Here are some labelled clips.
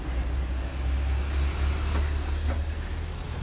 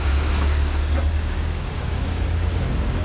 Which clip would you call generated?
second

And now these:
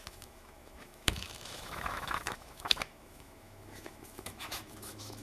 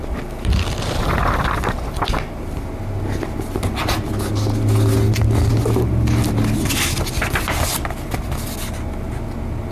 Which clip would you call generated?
first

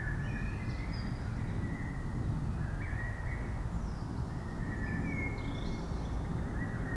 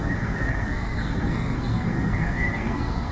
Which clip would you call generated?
second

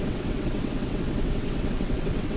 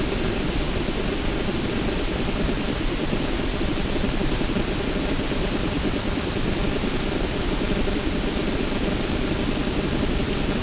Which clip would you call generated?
first